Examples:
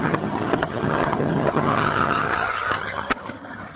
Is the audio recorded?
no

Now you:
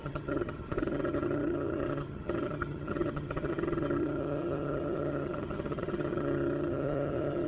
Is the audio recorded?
no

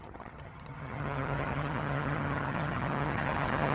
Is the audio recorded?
no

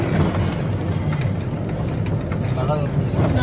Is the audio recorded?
yes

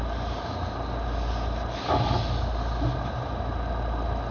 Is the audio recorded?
yes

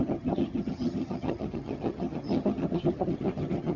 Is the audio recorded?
no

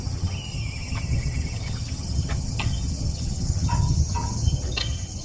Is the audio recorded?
no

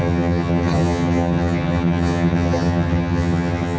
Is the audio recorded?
no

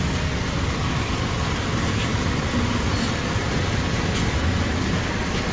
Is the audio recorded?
yes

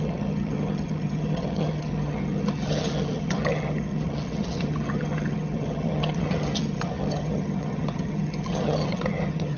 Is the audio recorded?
no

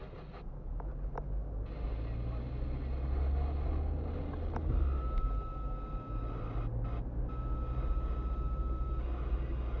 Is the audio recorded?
yes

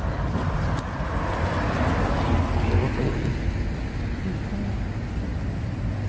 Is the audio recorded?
yes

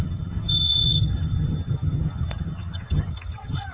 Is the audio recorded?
no